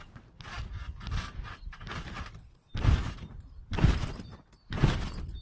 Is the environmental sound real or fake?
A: real